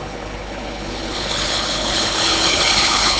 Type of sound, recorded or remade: remade